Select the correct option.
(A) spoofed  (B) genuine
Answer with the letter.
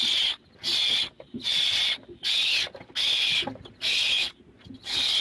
B